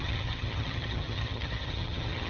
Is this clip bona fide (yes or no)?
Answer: no